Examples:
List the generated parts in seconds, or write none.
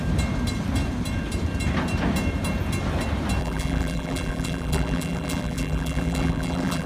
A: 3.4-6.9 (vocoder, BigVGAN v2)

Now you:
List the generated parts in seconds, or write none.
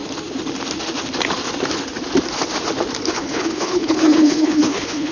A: 3.1-5.1 (codec, HILCodec)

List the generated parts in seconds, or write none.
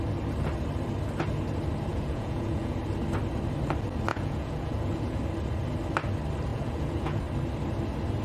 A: 1.9-2.8 (vocoder, Vocos); 4.1-5.2; 6.5-7.2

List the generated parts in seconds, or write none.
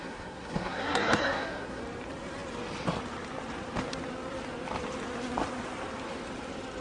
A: 0.0-1.8 (codec, SNAC)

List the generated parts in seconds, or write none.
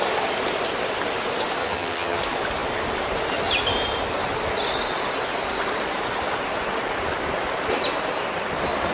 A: 1.6-2.2 (vocoder, HiFi-GAN)